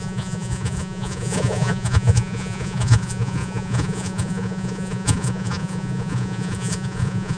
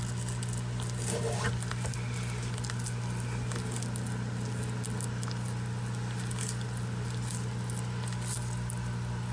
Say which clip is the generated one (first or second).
first